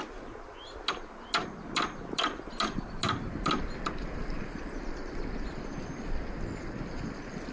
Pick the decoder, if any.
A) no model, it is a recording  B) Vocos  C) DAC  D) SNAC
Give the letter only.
A